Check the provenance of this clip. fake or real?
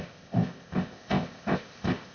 fake